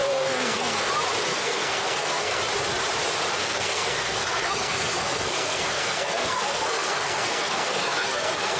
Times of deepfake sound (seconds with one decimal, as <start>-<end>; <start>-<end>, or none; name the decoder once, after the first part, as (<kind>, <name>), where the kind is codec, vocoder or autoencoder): 0.0-0.9 (codec, SNAC); 1.3-2.4; 3.4-8.6